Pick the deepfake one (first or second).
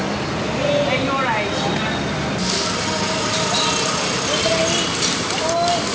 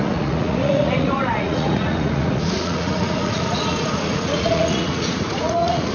second